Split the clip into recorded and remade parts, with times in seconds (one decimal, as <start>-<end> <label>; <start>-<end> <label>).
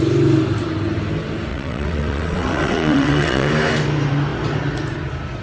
0.0-1.5 recorded; 1.5-3.5 remade; 3.5-5.4 recorded